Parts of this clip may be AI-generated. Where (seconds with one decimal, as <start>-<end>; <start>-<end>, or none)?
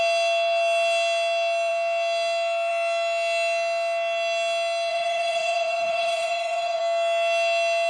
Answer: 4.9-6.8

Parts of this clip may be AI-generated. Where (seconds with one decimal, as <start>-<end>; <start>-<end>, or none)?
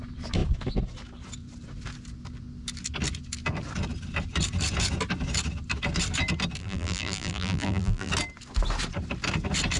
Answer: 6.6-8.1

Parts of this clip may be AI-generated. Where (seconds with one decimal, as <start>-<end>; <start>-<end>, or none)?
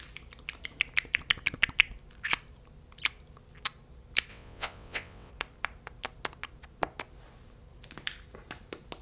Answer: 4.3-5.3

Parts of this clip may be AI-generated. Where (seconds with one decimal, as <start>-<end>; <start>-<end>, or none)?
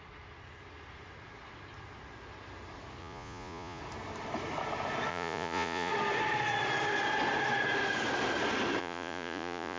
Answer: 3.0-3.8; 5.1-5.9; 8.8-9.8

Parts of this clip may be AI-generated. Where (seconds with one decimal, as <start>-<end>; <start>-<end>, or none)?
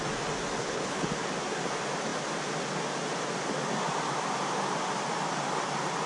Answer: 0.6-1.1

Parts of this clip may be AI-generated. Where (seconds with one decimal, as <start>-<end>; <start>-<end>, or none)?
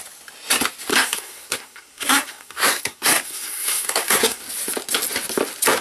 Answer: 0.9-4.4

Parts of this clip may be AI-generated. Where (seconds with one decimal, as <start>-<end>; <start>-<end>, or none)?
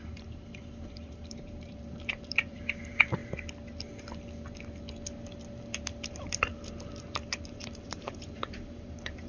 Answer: 0.0-3.2; 6.1-6.5; 7.5-9.3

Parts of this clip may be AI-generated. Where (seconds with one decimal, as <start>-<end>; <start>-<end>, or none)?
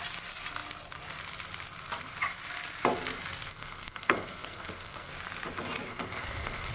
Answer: 3.5-5.1; 5.9-6.7